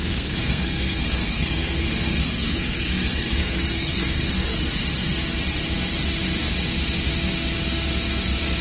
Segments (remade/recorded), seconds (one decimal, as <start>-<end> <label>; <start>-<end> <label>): 0.0-4.5 remade; 4.5-8.6 recorded